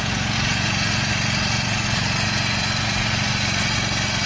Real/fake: fake